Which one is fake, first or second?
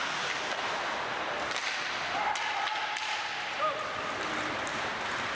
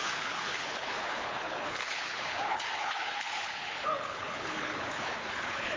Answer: second